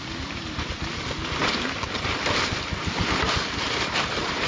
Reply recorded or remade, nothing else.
remade